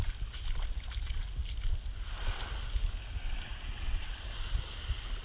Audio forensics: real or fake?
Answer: real